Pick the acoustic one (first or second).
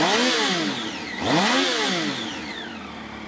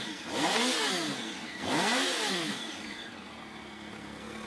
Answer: first